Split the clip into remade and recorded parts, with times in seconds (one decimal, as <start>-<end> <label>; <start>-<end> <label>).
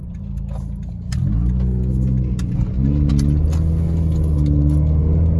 0.0-5.4 recorded